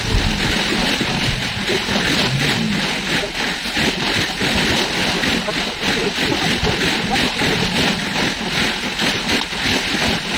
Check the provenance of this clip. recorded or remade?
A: recorded